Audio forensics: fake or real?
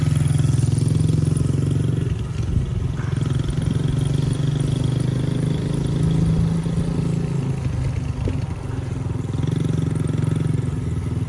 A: real